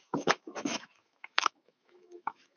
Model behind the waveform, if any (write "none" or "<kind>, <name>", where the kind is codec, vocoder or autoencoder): autoencoder, DAC-VAE